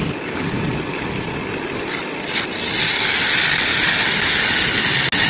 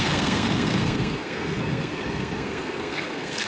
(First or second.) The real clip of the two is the first